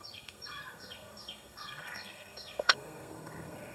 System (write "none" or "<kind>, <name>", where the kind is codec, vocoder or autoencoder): codec, SNAC